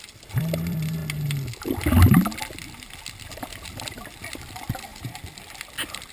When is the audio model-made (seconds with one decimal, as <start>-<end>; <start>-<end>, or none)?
0.0-1.0; 3.3-6.1